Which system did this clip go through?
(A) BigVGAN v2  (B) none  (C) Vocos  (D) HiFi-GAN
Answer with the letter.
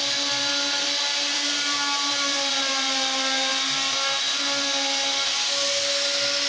B